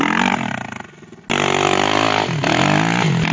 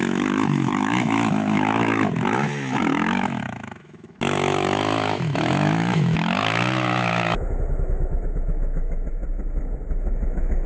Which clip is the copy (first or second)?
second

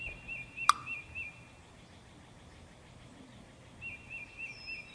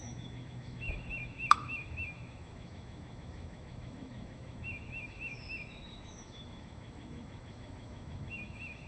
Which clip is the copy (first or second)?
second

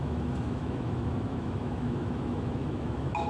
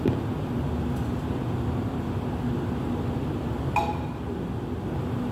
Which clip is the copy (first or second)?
first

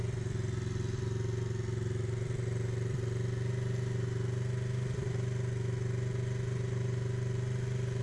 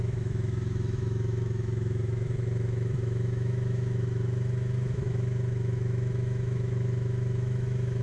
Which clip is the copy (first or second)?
second